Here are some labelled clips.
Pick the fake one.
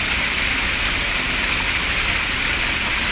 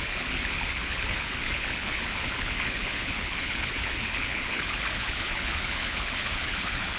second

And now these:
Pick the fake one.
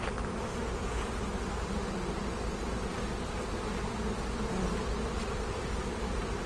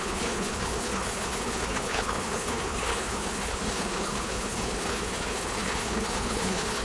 second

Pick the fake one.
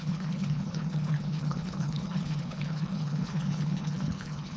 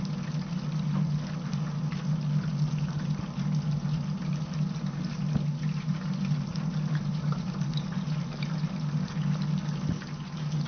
first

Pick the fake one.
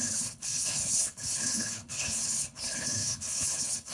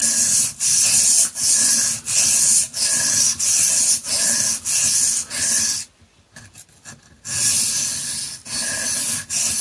first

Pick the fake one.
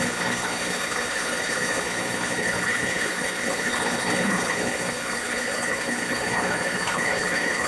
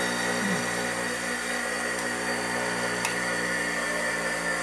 first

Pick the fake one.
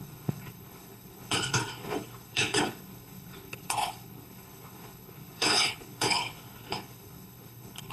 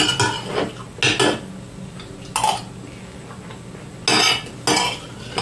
first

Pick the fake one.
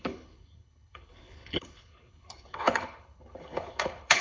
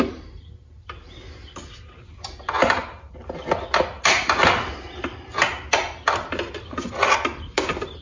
first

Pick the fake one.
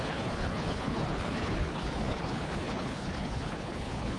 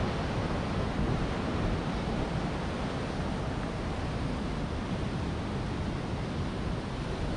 first